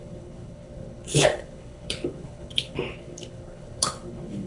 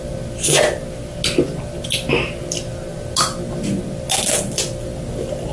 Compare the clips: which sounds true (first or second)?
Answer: second